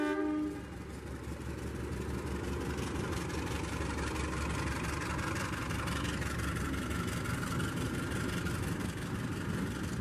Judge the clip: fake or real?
real